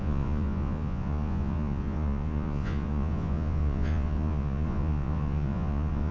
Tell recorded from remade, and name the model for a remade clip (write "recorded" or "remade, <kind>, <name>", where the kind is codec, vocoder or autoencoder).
remade, vocoder, Vocos